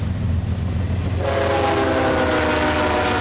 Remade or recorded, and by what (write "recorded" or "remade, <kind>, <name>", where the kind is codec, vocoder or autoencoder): recorded